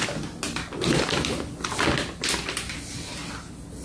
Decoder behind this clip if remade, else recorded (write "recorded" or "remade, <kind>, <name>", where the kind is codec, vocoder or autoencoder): recorded